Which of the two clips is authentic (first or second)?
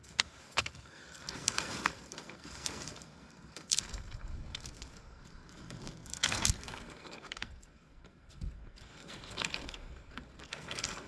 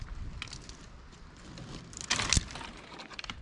second